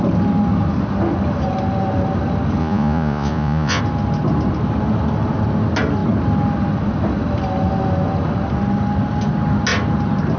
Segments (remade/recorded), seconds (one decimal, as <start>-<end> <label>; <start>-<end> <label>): 0.0-2.6 recorded; 2.6-3.8 remade; 3.8-10.4 recorded